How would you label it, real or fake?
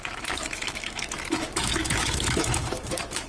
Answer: fake